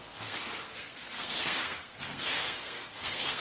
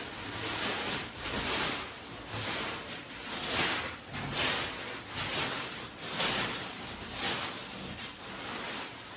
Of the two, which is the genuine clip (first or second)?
second